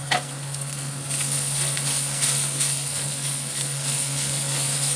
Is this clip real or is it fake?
fake